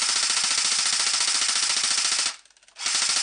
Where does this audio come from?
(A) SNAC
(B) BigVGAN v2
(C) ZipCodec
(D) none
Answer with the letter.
D